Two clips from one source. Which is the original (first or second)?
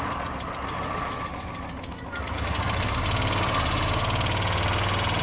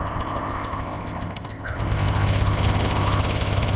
first